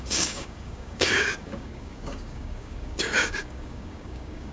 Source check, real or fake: fake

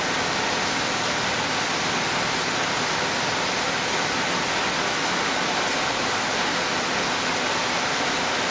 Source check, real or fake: real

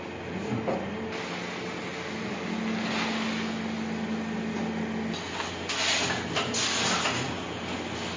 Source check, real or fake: real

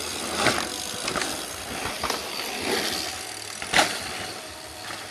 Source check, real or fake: real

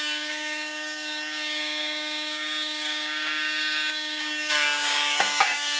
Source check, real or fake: fake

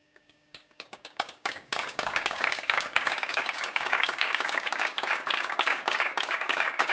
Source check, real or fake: fake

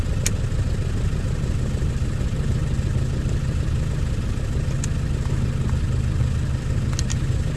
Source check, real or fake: real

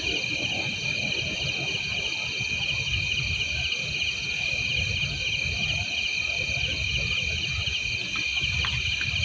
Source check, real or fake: real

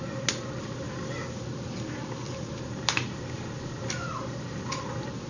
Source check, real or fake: real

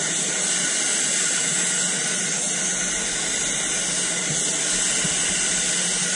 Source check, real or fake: real